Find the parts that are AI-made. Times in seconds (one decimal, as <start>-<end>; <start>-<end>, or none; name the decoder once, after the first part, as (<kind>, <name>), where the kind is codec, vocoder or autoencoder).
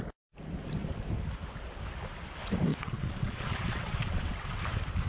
2.7-4.6 (vocoder, WaveNeXt)